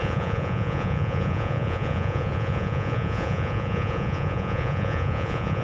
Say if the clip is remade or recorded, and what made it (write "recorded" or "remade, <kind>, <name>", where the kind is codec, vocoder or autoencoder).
remade, vocoder, Vocos